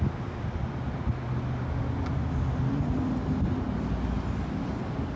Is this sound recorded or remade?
recorded